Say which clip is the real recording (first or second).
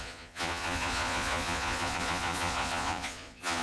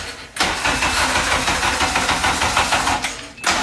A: second